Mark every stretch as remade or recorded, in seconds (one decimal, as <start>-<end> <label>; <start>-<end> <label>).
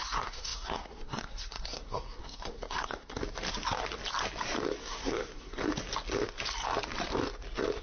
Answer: 0.0-3.2 remade; 3.2-4.8 recorded; 4.8-5.6 remade; 5.6-7.8 recorded